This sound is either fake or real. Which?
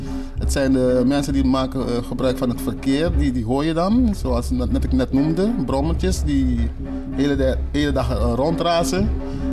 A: real